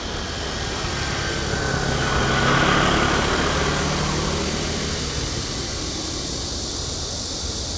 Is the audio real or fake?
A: real